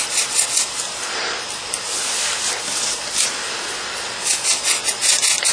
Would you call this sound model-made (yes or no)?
no